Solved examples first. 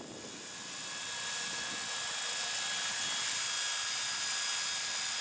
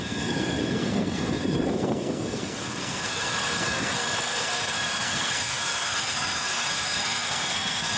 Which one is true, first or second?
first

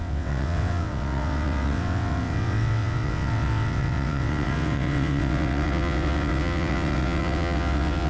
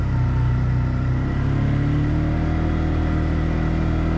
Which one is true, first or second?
second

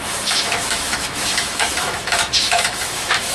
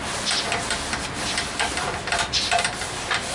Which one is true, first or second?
second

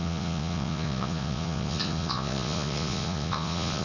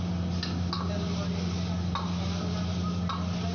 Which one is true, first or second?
second